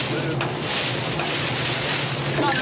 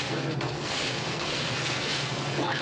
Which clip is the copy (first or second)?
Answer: second